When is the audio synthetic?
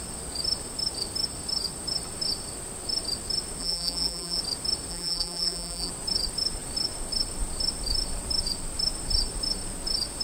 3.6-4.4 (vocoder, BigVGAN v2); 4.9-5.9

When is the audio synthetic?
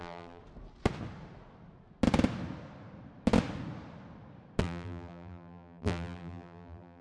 0.0-0.4 (vocoder, BigVGAN v2); 4.6-7.0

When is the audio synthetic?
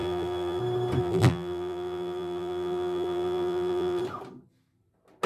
0.0-0.6 (vocoder, BigVGAN v2); 1.0-4.0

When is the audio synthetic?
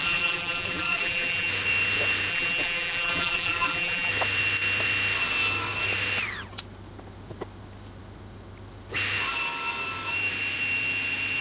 0.0-1.5 (vocoder, BigVGAN v2); 2.3-4.1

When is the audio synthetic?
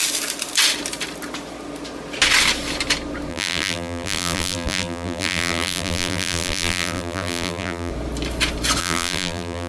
3.3-7.9 (vocoder, BigVGAN v2); 8.8-9.7